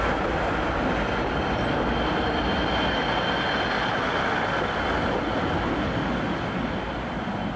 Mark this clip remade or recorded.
recorded